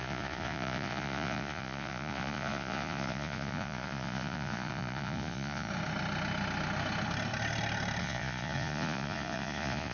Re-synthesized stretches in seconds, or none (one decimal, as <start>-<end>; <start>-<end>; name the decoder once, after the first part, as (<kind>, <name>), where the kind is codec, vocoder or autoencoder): 0.0-5.7 (vocoder, Vocos); 8.0-9.9